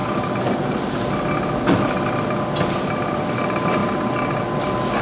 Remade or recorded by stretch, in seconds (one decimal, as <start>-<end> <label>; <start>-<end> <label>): 0.0-5.0 recorded